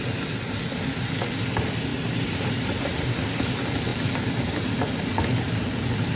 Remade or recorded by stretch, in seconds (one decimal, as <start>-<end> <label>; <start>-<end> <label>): 0.0-1.9 recorded; 1.9-2.4 remade; 2.4-3.9 recorded; 3.9-4.7 remade; 4.7-6.2 recorded